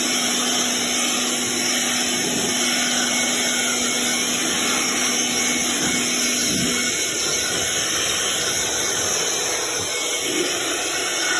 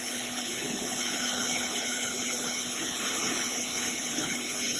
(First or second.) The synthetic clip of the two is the second